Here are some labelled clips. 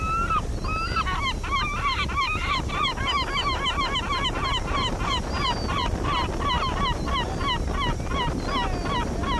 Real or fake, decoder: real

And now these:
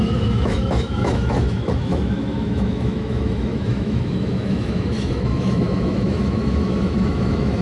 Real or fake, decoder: fake, autoencoder, DAC-VAE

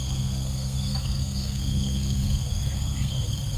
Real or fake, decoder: fake, codec, SNAC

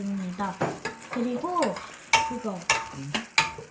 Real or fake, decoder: real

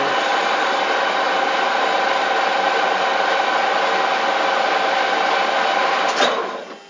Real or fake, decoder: real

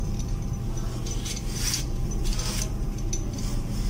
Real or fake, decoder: real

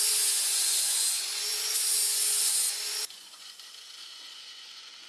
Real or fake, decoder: fake, vocoder, Vocos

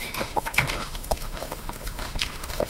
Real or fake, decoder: fake, autoencoder, DAC-VAE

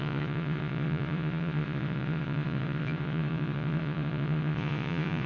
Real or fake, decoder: fake, vocoder, Vocos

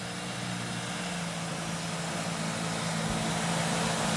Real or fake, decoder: real